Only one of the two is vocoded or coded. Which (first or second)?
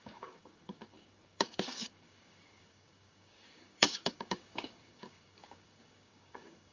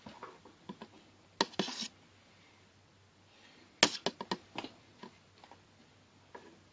first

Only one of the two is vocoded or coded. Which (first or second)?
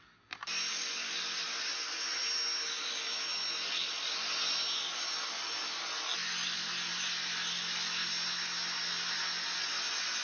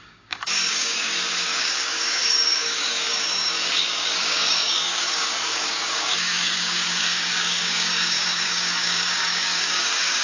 second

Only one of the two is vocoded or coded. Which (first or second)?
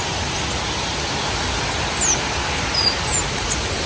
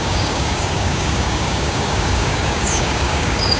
second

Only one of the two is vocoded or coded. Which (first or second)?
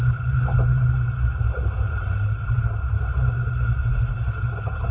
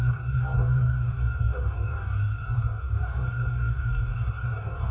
second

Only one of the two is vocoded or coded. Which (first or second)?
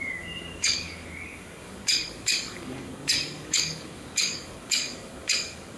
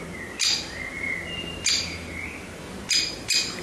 first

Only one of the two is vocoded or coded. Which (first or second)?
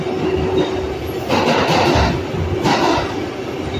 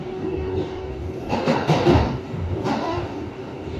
second